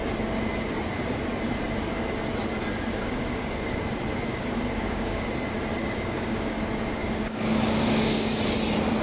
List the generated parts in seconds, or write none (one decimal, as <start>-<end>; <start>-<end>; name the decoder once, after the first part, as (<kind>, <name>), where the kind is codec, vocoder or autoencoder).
2.9-3.8 (codec, DAC); 4.3-5.3; 5.8-6.6; 7.0-8.4